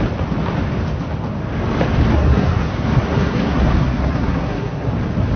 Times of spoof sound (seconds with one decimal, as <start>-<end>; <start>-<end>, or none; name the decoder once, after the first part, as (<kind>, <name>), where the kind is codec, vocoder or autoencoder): 2.1-4.9 (codec, SNAC)